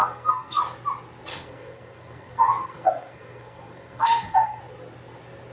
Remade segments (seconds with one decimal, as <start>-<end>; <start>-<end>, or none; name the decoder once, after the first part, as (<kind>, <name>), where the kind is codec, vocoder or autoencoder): 0.0-0.6 (codec, SNAC); 1.3-4.6